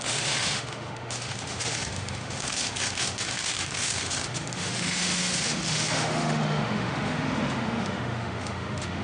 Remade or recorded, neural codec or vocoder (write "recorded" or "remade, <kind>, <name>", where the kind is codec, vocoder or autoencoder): remade, autoencoder, DAC-VAE